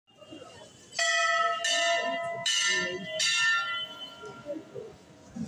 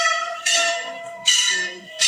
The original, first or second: first